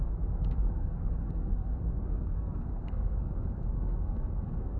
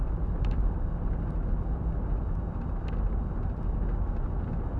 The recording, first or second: second